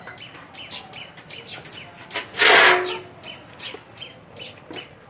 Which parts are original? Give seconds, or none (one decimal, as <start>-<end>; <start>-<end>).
0.0-5.1